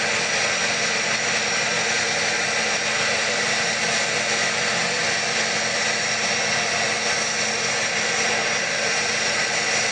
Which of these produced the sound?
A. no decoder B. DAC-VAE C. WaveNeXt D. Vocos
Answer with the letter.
A